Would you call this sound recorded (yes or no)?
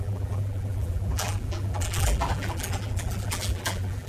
no